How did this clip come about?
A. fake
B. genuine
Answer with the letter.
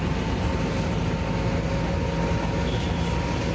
B